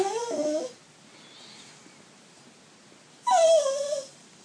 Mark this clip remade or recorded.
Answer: recorded